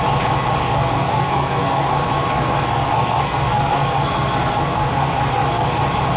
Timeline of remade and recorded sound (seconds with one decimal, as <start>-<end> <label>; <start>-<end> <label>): 0.0-0.6 recorded; 0.6-1.9 remade; 1.9-2.3 recorded; 2.3-5.8 remade; 5.8-6.2 recorded